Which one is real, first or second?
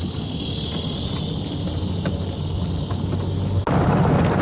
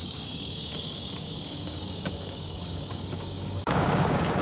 first